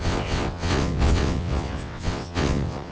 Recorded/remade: remade